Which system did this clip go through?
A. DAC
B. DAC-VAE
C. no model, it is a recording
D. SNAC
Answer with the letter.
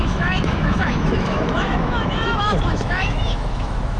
B